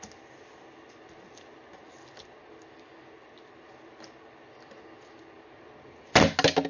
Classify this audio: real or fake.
real